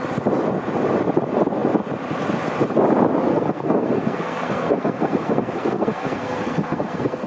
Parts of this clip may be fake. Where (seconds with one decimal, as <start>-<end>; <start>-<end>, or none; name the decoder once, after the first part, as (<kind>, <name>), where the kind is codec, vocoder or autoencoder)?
3.3-7.3 (codec, SNAC)